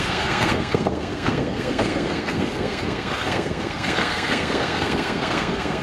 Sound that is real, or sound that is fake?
fake